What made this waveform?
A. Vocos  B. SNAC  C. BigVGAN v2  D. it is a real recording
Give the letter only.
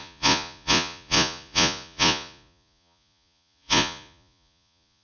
A